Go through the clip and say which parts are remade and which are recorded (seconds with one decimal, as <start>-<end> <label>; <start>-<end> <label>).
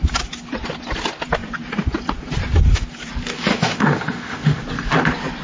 0.0-3.5 recorded; 3.5-4.6 remade; 4.6-5.4 recorded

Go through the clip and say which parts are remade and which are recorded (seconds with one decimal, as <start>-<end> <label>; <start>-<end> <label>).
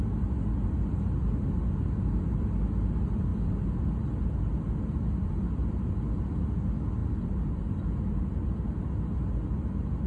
0.0-10.1 recorded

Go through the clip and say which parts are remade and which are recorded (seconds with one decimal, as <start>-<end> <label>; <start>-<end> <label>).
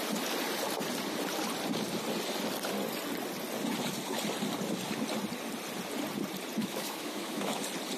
0.0-6.6 recorded; 6.6-7.6 remade; 7.6-8.0 recorded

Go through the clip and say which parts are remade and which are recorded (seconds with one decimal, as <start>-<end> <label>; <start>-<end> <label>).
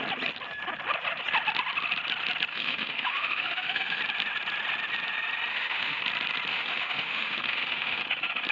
0.0-2.5 recorded; 2.5-4.0 remade; 4.0-5.5 recorded; 5.5-6.0 remade; 6.0-6.5 recorded; 6.5-8.0 remade; 8.0-8.5 recorded